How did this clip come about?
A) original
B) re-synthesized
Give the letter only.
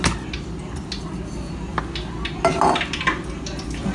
A